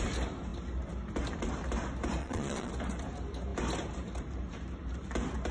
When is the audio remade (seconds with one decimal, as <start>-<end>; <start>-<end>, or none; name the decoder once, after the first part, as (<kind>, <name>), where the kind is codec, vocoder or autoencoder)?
2.2-2.7 (vocoder, Vocos)